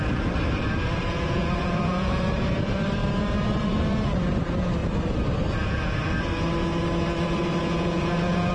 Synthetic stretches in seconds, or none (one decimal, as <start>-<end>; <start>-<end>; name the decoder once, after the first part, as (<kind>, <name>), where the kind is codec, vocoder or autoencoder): 1.0-2.2 (vocoder, Vocos); 7.6-8.5